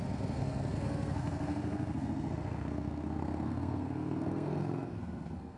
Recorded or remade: remade